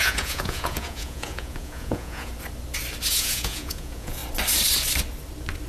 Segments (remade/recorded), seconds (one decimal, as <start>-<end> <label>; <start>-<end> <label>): 0.0-2.3 remade; 2.3-3.1 recorded; 3.1-4.2 remade; 4.2-5.7 recorded